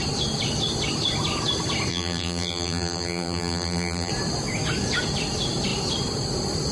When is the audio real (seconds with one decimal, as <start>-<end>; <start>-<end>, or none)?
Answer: 0.0-1.9; 4.1-6.7